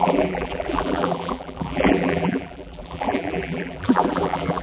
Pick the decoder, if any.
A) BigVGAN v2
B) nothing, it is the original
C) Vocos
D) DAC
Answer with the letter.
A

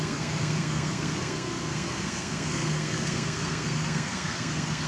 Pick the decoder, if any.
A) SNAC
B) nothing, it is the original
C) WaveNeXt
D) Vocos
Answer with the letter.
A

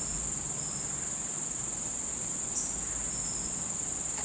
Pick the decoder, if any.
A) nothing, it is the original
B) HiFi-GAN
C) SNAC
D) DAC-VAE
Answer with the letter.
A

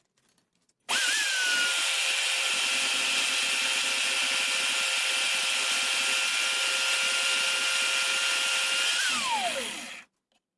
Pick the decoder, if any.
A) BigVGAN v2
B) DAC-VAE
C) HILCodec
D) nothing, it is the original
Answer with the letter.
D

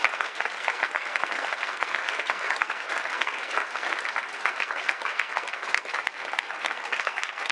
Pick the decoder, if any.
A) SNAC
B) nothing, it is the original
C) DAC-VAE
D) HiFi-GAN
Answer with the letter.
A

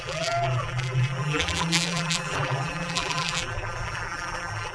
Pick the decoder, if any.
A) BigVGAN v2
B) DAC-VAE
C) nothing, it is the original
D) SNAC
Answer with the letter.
A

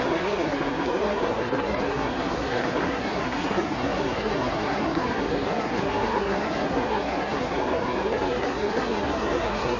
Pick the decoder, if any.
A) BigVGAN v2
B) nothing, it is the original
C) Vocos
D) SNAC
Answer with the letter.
D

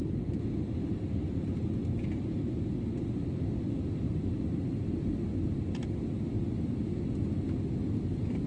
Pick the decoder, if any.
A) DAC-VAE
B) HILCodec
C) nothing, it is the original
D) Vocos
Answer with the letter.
C